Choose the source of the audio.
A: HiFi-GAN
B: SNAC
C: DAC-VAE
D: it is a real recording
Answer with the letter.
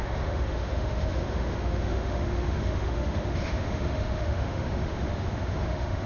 C